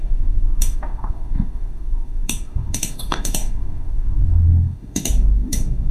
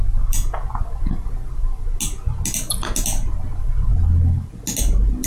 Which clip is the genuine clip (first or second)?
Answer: second